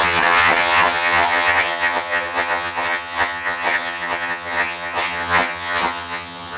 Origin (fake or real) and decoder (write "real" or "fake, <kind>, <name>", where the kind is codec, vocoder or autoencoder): fake, vocoder, HiFi-GAN